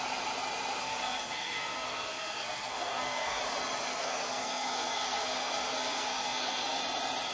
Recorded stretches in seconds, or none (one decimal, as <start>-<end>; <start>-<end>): 0.0-0.8; 3.4-3.9; 6.8-7.3